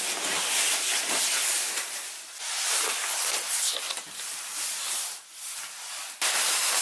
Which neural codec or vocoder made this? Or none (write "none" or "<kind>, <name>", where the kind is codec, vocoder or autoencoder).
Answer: none